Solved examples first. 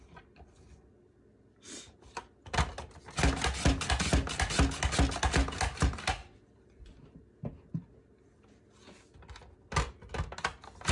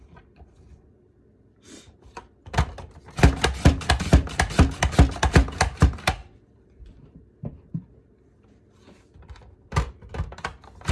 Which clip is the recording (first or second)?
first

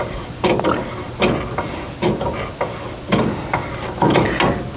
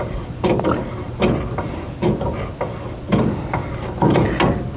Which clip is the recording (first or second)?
first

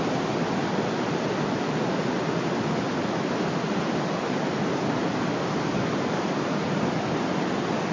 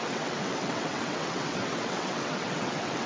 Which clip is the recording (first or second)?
first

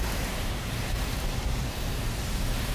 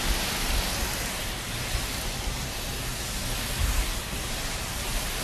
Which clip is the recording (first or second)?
second